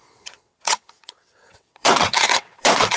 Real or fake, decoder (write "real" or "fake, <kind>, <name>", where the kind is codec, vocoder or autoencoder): fake, vocoder, WaveNeXt